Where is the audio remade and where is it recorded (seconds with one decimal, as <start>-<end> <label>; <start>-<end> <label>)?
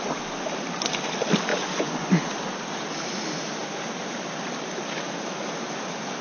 0.0-1.5 recorded; 1.5-2.1 remade; 2.1-6.2 recorded